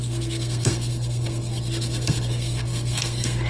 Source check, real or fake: fake